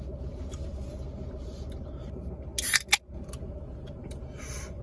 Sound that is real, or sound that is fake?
real